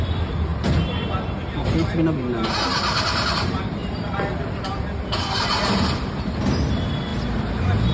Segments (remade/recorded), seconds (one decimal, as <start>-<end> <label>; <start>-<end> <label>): 0.0-3.8 recorded; 3.8-5.5 remade; 5.5-7.9 recorded